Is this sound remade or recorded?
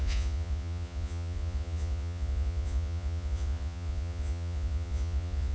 remade